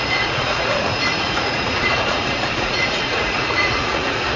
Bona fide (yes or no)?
no